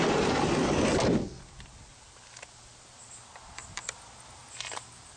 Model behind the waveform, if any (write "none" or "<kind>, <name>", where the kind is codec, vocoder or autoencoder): none